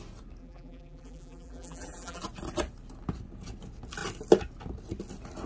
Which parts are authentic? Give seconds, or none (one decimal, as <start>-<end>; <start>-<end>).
0.0-0.4; 2.2-5.5